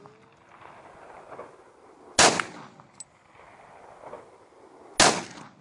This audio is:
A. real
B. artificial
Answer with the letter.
A